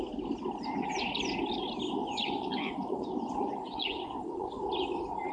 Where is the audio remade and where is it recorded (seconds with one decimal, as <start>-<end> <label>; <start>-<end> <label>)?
0.0-2.0 recorded; 2.0-4.5 remade; 4.5-5.3 recorded